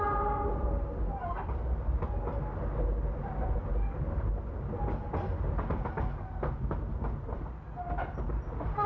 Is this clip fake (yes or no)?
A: no